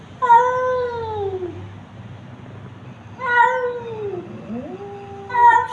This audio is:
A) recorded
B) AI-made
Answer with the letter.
A